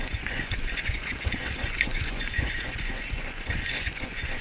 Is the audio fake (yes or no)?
yes